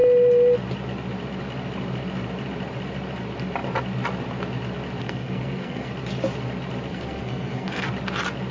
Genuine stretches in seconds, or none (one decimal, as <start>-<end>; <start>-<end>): 0.0-5.0; 5.9-6.9; 7.9-8.5